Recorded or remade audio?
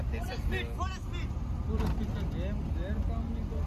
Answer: recorded